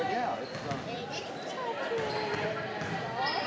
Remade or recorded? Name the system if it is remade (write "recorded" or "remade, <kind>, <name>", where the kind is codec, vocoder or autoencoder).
recorded